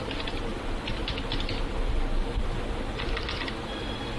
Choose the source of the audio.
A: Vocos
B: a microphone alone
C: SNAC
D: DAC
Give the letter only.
B